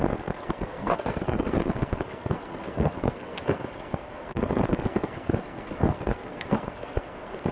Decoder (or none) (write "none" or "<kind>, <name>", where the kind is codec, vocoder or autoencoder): codec, SNAC